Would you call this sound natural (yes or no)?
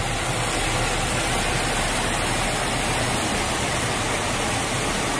yes